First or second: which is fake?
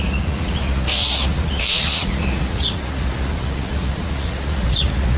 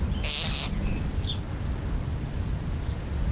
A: first